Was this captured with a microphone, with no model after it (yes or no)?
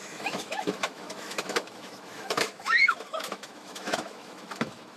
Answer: no